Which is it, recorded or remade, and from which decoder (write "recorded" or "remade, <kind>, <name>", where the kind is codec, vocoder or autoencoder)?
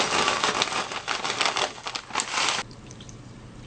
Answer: recorded